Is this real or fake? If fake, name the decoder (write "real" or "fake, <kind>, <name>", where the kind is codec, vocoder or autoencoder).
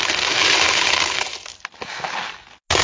real